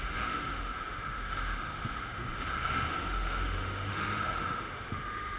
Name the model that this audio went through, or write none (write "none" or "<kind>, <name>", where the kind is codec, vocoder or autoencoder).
autoencoder, DAC-VAE